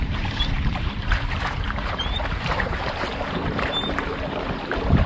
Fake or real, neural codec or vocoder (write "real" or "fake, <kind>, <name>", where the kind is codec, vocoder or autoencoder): fake, vocoder, BigVGAN v2